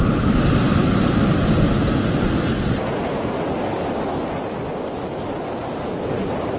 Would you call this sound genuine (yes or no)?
yes